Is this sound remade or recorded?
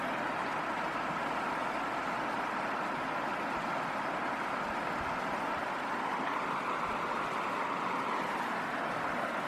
recorded